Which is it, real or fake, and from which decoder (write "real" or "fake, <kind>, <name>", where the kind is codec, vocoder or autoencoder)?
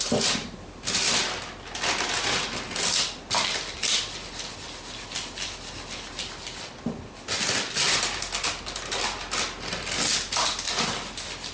real